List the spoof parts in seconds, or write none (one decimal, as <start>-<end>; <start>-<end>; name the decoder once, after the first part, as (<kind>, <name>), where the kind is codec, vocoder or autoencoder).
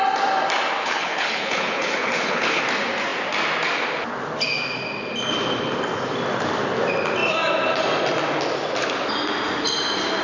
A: 0.8-2.6 (codec, HILCodec)